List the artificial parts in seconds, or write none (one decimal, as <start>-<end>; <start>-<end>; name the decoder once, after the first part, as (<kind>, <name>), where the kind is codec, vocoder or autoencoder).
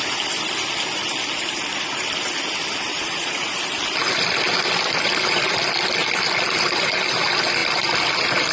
2.9-3.6 (vocoder, Vocos)